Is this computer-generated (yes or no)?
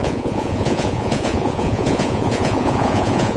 yes